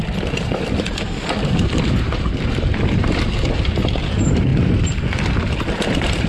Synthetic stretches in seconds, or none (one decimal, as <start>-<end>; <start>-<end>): 0.0-4.5; 5.6-6.3